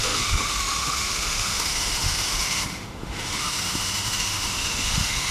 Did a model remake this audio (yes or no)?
yes